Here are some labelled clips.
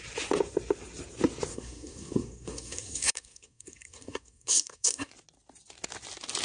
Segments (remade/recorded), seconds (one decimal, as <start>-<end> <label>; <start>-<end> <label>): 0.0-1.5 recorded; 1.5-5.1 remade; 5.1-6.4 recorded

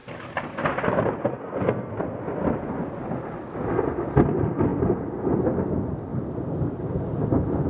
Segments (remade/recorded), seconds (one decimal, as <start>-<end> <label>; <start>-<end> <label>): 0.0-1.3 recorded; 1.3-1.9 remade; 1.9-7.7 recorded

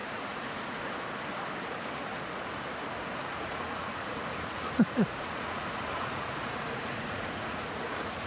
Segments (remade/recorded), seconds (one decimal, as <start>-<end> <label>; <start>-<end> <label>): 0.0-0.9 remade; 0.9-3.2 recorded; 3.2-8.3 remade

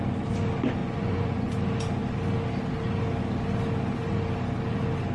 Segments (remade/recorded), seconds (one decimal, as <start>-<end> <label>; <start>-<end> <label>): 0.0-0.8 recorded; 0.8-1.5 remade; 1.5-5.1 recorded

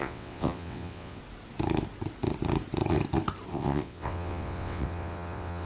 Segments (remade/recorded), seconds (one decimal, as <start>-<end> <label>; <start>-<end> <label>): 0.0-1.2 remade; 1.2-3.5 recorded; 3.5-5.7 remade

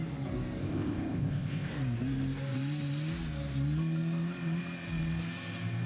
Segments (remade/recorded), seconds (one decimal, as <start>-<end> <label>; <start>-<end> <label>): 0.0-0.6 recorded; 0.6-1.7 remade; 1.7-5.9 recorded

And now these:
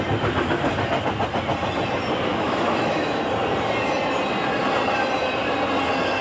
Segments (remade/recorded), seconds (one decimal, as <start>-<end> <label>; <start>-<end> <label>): 0.0-2.3 recorded; 2.3-3.2 remade; 3.2-6.2 recorded

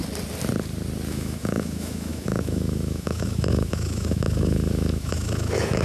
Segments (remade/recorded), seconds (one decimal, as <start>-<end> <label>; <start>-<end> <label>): 0.0-1.1 recorded; 1.1-5.8 remade